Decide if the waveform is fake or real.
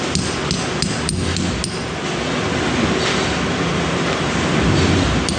real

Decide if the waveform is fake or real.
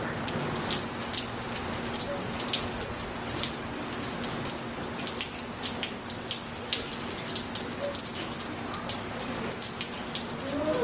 real